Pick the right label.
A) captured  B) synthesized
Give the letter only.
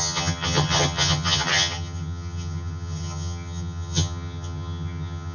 B